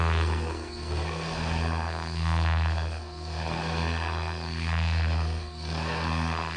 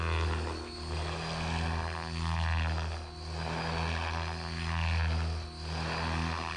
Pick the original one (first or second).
second